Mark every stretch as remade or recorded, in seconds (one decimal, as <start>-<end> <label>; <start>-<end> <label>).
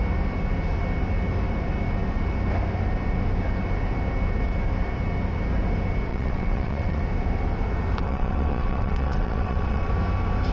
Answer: 0.0-6.1 recorded; 6.1-7.0 remade; 7.0-8.0 recorded; 8.0-9.9 remade; 9.9-10.5 recorded